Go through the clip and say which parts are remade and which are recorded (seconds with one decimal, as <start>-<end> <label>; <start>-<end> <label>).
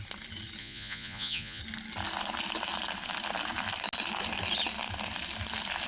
0.0-0.6 recorded; 0.6-1.6 remade; 1.6-5.9 recorded